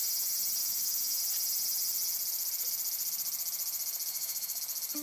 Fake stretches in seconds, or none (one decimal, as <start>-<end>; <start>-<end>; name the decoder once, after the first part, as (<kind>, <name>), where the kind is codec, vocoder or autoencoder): 0.6-1.2 (autoencoder, DAC-VAE); 4.1-4.6